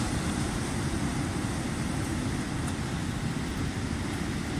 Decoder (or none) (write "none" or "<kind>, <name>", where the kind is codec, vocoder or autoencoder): none